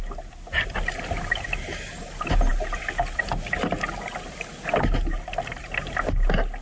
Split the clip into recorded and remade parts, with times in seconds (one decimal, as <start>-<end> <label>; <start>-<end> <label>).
0.0-6.6 recorded